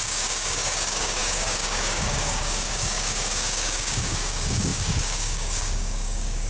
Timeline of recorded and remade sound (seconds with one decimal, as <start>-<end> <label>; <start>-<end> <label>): 0.0-6.5 remade